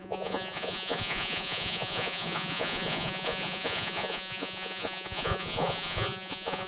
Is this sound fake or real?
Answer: fake